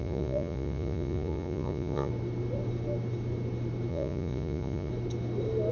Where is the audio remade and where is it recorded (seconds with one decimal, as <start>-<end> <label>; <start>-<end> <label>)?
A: 0.0-2.1 remade; 2.1-3.9 recorded; 3.9-4.9 remade; 4.9-5.7 recorded